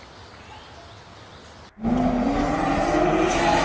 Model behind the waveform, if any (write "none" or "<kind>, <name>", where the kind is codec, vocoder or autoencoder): none